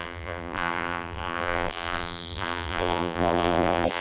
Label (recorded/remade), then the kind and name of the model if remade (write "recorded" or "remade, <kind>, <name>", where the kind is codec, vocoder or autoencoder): remade, vocoder, BigVGAN v2